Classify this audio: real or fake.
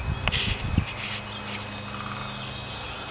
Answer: real